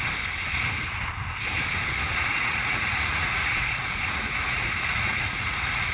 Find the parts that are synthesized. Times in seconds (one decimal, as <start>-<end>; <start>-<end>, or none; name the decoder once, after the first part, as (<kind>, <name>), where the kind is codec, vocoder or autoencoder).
2.1-5.9 (vocoder, Vocos)